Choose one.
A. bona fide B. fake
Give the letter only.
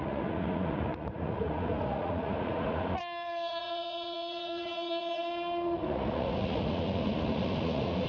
B